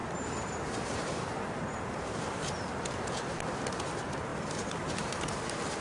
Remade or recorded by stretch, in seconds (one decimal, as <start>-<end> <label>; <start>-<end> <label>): 0.0-3.1 remade; 3.1-4.3 recorded; 4.3-5.2 remade; 5.2-5.8 recorded